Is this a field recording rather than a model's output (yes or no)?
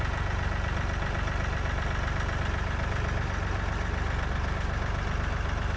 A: yes